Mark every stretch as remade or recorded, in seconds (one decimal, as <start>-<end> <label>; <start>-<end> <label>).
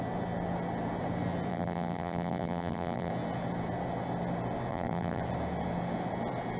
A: 0.0-1.5 recorded; 1.5-3.1 remade; 3.1-4.7 recorded; 4.7-5.2 remade; 5.2-6.6 recorded